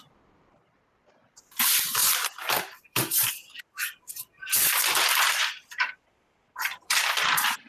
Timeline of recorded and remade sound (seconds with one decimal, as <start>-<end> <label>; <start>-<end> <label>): 0.0-2.0 remade; 2.0-2.6 recorded; 2.6-7.7 remade